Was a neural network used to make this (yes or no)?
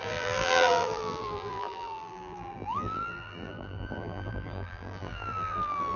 yes